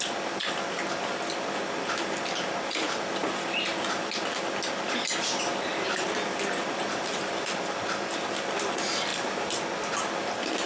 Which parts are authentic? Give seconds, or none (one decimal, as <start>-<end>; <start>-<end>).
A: 0.0-10.7